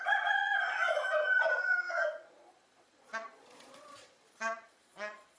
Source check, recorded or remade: remade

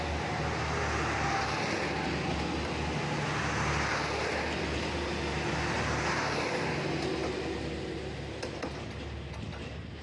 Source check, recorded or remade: recorded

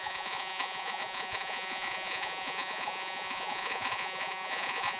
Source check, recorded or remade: remade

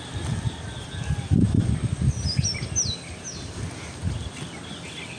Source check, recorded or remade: recorded